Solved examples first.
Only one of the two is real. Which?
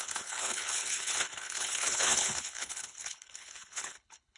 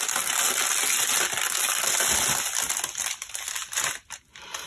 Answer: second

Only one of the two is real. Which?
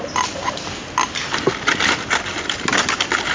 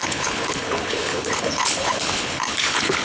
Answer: first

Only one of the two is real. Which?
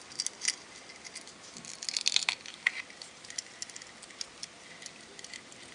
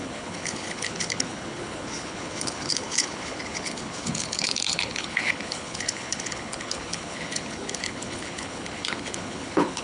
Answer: first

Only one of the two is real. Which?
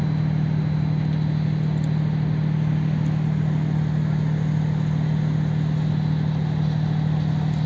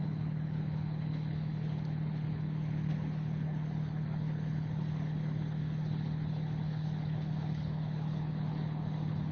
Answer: first